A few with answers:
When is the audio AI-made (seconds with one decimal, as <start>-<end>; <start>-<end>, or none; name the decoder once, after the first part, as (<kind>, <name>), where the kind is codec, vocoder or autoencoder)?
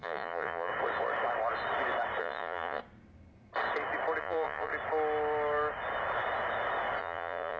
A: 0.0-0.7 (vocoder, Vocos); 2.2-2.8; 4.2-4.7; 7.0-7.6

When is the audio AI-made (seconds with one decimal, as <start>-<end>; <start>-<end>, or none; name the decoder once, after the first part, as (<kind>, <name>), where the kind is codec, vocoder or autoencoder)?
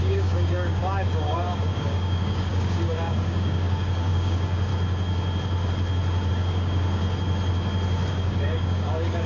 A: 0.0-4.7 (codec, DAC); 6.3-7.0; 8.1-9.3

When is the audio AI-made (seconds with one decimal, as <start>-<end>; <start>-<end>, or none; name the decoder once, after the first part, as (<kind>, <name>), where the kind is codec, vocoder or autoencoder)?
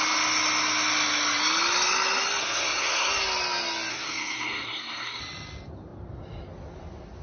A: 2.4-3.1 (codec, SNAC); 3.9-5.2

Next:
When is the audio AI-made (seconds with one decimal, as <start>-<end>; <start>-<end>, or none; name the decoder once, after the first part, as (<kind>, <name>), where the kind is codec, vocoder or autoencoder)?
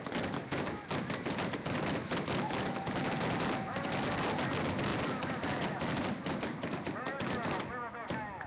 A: 4.9-6.4 (vocoder, BigVGAN v2)